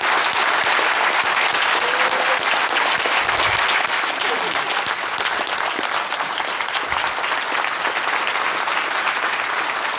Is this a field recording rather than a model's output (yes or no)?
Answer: yes